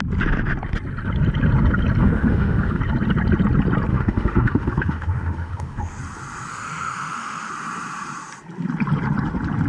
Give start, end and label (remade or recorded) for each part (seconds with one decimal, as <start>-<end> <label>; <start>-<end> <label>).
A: 0.0-2.0 recorded; 2.0-2.8 remade; 2.8-3.9 recorded; 3.9-6.0 remade; 6.0-6.5 recorded; 6.5-7.5 remade; 7.5-9.7 recorded